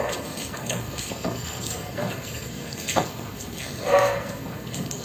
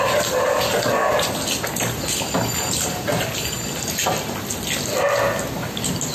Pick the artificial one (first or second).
first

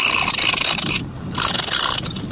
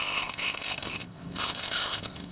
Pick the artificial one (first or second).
second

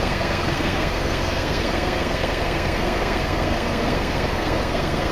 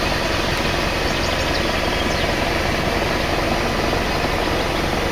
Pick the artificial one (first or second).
first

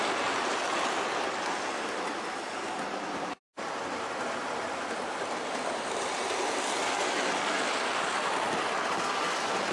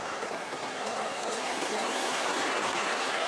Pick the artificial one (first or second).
second